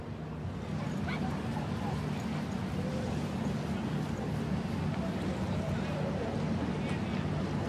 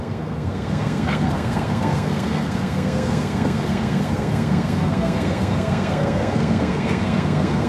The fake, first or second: second